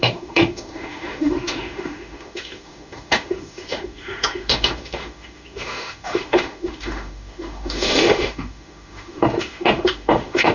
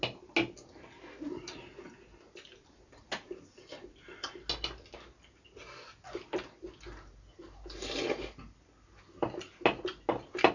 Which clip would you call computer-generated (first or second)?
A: first